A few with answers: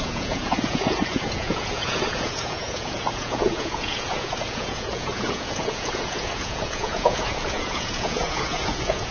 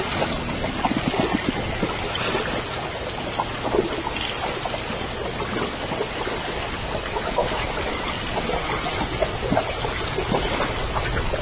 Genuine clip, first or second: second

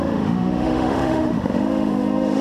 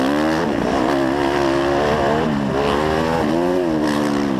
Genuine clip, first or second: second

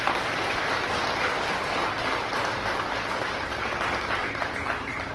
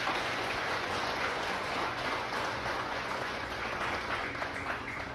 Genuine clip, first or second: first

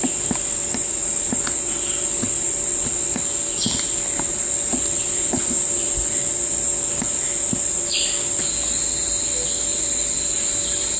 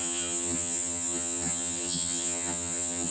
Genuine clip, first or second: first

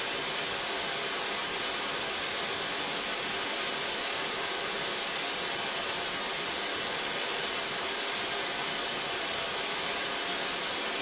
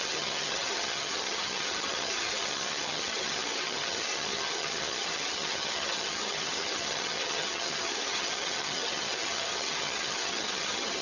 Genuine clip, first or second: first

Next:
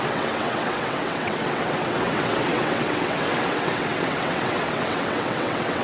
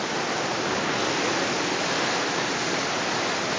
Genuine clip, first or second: second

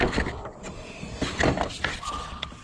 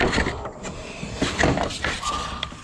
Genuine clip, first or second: second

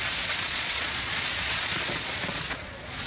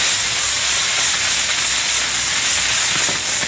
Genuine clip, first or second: second